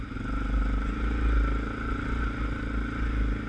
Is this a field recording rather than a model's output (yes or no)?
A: yes